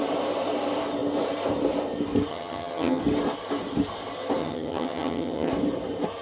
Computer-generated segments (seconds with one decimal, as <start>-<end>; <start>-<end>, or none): 2.3-3.0; 4.4-5.5